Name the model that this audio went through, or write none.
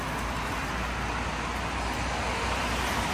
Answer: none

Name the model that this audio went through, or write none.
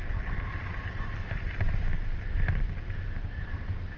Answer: none